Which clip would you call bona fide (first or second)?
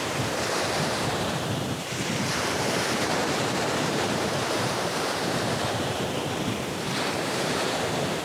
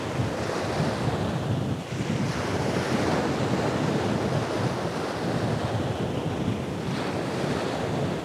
second